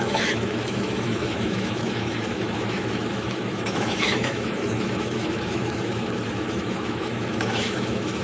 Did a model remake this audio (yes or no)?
yes